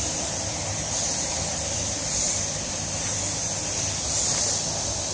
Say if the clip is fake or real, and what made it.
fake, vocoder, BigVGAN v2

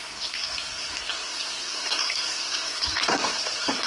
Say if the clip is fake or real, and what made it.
fake, codec, SNAC